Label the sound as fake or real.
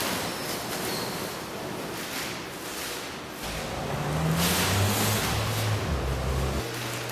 real